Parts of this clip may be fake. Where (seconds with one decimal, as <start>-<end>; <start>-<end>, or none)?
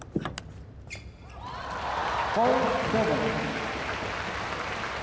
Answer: none